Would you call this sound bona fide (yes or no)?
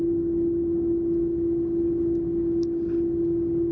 yes